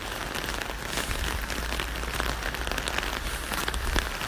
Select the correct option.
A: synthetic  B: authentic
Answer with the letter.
B